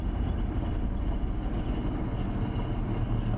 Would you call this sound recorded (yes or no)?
yes